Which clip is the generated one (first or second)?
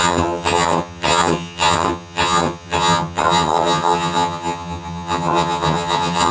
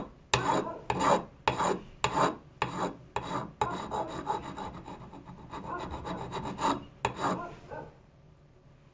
first